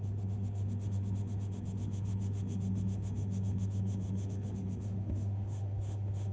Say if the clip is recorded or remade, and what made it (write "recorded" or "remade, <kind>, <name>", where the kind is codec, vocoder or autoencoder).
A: remade, autoencoder, DAC-VAE